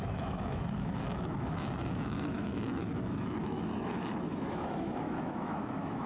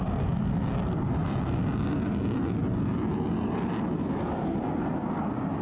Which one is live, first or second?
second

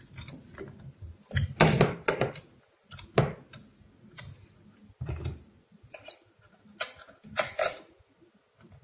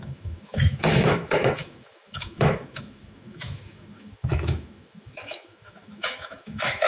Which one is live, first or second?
first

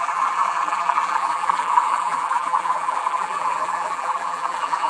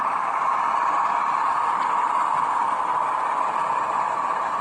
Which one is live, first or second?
second